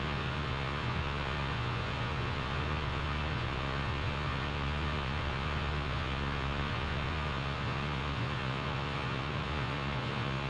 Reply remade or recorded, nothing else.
remade